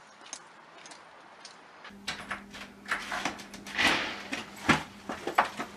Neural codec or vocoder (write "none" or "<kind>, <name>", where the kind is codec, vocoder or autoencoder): none